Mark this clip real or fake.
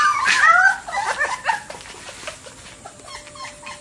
real